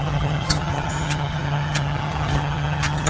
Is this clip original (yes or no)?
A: no